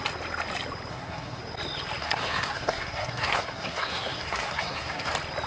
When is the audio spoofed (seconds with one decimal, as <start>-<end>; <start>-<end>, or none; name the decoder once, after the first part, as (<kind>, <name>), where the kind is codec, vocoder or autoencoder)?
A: 0.9-1.4 (codec, SNAC); 2.0-5.1